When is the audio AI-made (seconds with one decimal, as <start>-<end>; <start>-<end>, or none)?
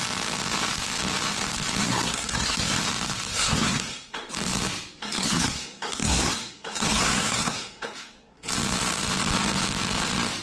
1.8-2.8; 3.3-4.3; 5.0-8.5